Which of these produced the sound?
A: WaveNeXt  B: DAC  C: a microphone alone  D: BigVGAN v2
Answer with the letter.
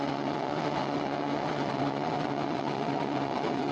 A